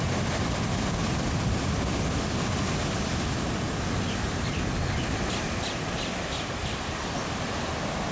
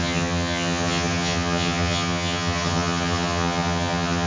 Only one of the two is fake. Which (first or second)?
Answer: second